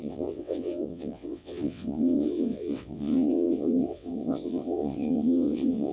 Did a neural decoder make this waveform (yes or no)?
yes